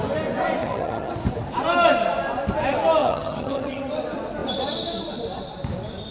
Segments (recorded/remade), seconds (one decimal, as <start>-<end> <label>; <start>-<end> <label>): 0.0-0.6 recorded; 0.6-1.1 remade; 1.1-3.0 recorded; 3.0-3.9 remade; 3.9-6.1 recorded